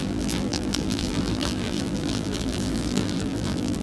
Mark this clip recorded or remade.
remade